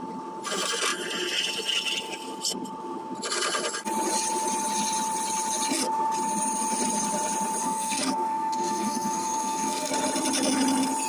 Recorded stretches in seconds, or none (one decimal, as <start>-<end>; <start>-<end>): 0.0-7.6; 9.9-11.1